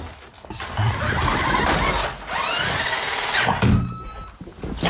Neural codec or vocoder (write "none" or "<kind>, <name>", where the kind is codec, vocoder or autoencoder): none